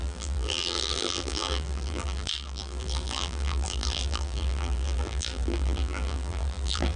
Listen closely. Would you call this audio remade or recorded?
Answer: remade